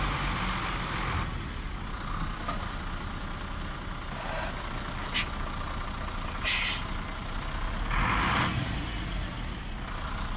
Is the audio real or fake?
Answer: real